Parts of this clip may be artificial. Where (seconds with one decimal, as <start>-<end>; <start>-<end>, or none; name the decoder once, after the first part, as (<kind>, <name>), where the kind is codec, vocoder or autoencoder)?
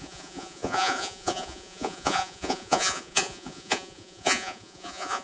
0.0-5.2 (vocoder, Vocos)